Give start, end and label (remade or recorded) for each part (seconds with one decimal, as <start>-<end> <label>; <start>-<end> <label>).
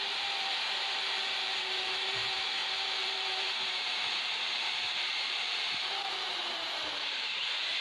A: 0.0-7.8 remade